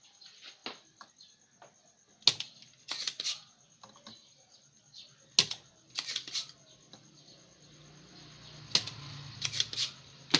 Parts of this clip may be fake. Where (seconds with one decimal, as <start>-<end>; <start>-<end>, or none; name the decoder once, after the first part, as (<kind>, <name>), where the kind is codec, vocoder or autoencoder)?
none